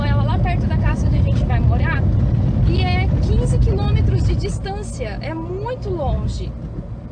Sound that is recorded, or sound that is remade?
recorded